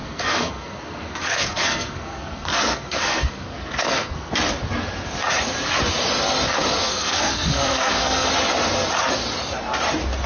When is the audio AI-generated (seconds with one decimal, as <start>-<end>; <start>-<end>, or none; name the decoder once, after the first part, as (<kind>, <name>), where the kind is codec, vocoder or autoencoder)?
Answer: 0.0-4.3 (codec, SNAC); 6.8-8.3